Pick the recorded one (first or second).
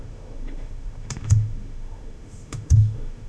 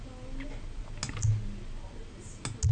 second